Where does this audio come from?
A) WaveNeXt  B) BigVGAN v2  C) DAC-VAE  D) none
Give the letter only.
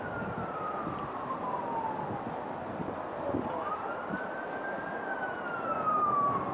D